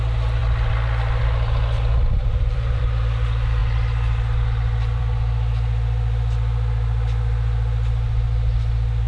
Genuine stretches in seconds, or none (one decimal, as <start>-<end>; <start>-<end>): 0.0-2.2; 2.8-9.1